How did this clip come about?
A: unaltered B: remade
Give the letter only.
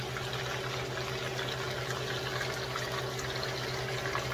A